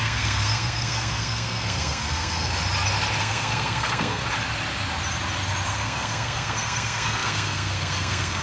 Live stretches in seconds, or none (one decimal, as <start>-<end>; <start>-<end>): 2.5-3.2; 4.2-5.7